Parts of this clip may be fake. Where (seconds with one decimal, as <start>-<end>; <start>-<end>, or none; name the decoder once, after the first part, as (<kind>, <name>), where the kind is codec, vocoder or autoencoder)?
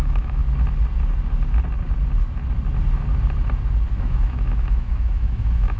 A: 0.0-0.4 (autoencoder, DAC-VAE); 3.9-5.8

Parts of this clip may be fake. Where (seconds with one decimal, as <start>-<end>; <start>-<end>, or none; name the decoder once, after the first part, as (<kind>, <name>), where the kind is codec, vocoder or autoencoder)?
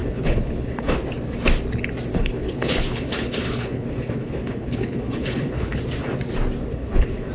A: 0.0-1.0 (codec, HILCodec); 2.1-5.8; 6.7-7.3